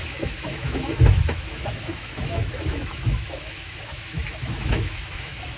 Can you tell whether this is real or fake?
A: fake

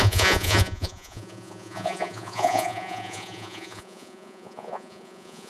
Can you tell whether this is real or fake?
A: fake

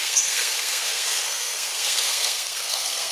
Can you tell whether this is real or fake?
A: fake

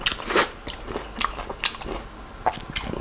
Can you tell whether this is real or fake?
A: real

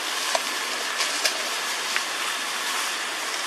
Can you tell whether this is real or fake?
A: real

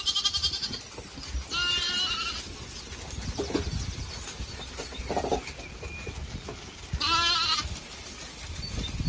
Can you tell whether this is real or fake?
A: real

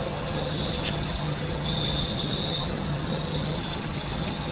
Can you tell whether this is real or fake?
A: fake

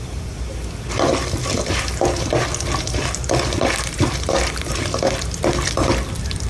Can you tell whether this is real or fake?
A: real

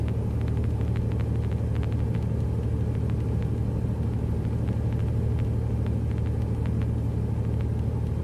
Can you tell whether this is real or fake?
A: real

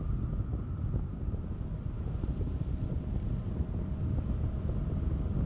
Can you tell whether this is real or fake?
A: real